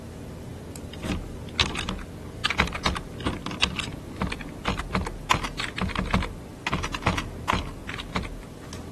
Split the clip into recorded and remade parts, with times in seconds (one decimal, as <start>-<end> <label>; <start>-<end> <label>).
0.0-0.5 recorded; 0.5-1.0 remade; 1.0-2.4 recorded; 2.4-4.9 remade; 4.9-7.8 recorded; 7.8-8.4 remade; 8.4-8.9 recorded